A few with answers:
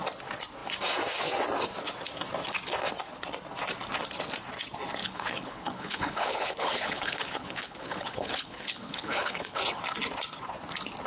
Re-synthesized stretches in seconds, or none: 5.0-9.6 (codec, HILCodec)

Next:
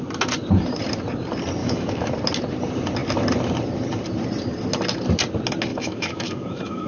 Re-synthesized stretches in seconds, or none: 1.6-2.1 (autoencoder, DAC-VAE); 5.7-6.9

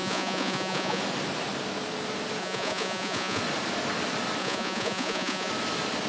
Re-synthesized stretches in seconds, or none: 0.0-1.0 (vocoder, Vocos); 2.4-3.4; 4.4-5.5

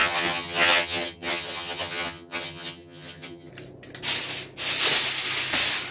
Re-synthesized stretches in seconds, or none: 0.0-3.5 (vocoder, HiFi-GAN)